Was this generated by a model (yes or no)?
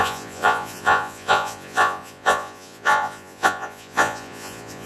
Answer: yes